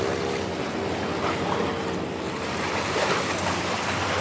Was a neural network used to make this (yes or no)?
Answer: no